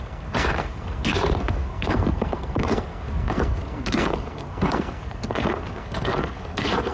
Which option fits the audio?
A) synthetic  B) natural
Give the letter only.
A